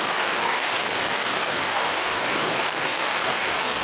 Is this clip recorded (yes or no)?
no